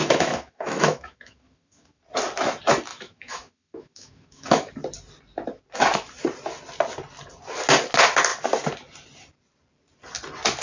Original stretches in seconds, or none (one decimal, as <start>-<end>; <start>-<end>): 2.0-2.9; 4.7-10.6